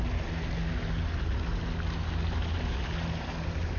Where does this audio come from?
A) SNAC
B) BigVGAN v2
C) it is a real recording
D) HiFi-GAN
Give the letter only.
C